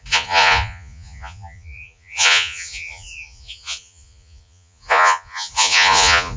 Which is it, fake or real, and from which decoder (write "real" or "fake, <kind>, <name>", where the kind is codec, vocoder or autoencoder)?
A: fake, vocoder, Vocos